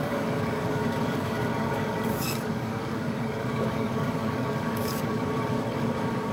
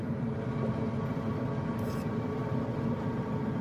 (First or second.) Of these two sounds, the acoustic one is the second